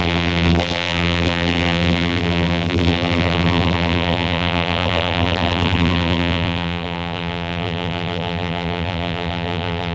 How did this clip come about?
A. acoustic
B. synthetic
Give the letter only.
B